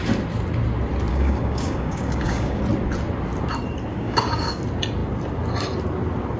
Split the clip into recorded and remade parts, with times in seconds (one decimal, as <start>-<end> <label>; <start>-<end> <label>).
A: 0.0-1.1 recorded; 1.1-2.6 remade; 2.6-3.9 recorded; 3.9-4.6 remade; 4.6-6.4 recorded